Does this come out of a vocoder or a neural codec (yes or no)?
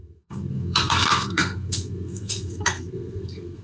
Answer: yes